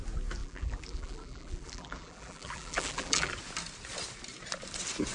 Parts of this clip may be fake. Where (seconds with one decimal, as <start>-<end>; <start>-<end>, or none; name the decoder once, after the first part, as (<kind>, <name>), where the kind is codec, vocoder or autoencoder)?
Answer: 0.4-3.3 (vocoder, BigVGAN v2)